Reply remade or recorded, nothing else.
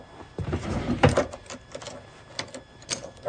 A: recorded